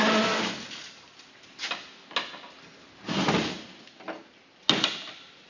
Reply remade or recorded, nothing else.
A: recorded